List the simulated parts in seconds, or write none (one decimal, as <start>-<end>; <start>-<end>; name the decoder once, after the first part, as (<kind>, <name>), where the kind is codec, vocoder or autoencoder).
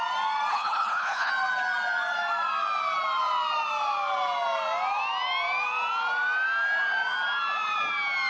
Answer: 0.5-1.3 (codec, HILCodec)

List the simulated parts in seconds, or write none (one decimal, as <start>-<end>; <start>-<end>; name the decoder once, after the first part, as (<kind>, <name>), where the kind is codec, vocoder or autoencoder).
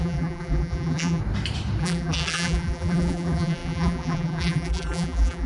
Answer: 0.0-1.2 (vocoder, BigVGAN v2); 1.8-5.5